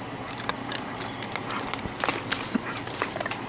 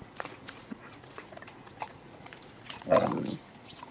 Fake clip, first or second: second